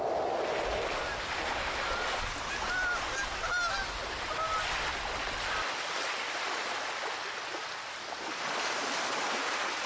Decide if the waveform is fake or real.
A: real